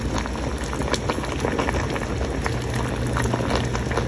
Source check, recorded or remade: recorded